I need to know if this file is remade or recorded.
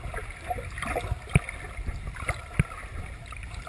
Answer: recorded